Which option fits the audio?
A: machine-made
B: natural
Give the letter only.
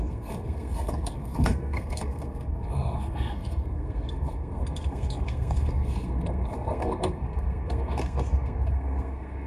A